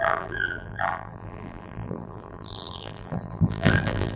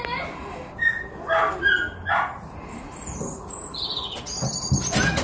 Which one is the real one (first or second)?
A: second